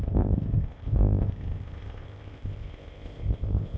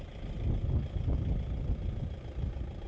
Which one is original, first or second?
second